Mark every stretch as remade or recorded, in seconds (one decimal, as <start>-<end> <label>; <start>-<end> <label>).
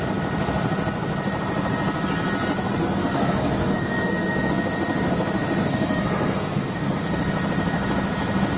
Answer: 0.0-2.8 recorded; 2.8-4.5 remade; 4.5-5.7 recorded; 5.7-7.0 remade; 7.0-8.6 recorded